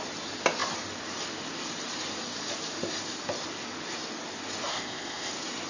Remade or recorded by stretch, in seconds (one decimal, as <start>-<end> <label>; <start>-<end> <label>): 0.0-4.7 recorded; 4.7-5.3 remade; 5.3-5.7 recorded